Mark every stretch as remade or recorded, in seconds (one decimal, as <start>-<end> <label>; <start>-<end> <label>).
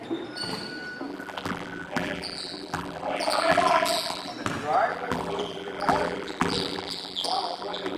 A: 0.0-1.1 recorded; 1.1-4.3 remade; 4.3-4.9 recorded; 4.9-8.0 remade